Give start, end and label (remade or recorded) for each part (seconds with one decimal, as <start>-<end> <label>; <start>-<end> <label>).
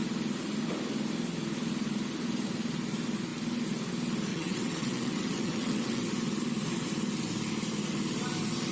0.0-4.3 recorded; 4.3-6.0 remade; 6.0-8.7 recorded